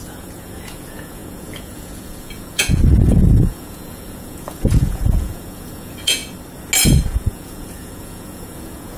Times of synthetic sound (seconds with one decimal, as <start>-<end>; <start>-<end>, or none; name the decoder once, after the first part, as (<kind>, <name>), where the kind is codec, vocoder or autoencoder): 0.0-6.2 (vocoder, Vocos); 7.0-9.0